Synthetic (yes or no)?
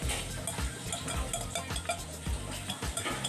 no